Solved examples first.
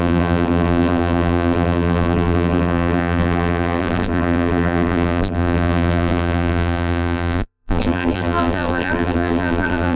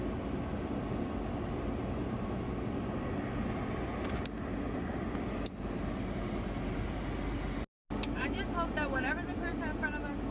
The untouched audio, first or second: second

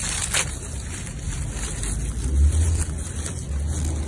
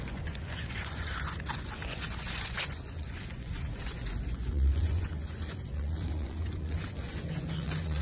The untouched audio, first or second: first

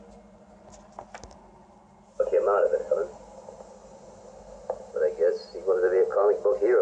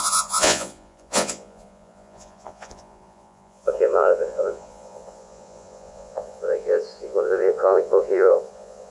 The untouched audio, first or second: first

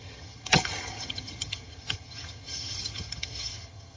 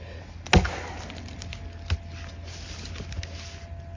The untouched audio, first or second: second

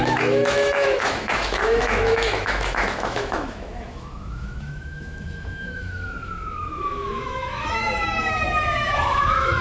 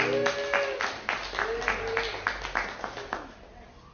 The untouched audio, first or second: second